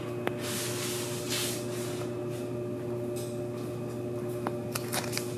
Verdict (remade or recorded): recorded